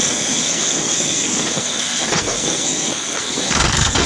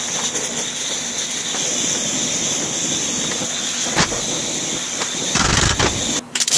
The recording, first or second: second